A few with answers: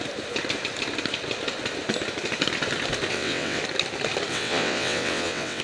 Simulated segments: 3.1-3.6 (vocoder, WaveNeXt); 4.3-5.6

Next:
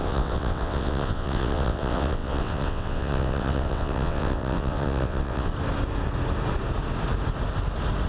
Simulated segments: 0.0-5.5 (vocoder, WaveNeXt)

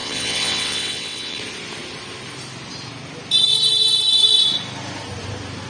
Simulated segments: 0.0-1.4 (vocoder, WaveNeXt)

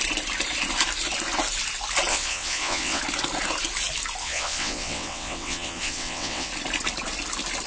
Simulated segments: 2.1-3.0 (vocoder, WaveNeXt); 4.2-6.5